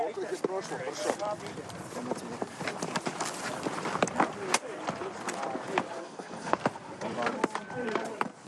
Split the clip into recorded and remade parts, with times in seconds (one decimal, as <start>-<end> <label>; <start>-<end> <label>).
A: 0.0-6.0 recorded; 6.0-6.6 remade; 6.6-8.5 recorded